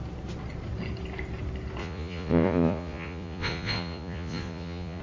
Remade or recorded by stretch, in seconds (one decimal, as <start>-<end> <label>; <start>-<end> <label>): 0.0-1.8 recorded; 1.8-5.0 remade